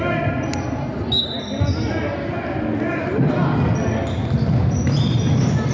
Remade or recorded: recorded